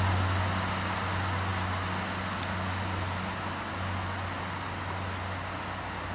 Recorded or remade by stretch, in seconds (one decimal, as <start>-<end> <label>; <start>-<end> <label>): 0.0-6.1 recorded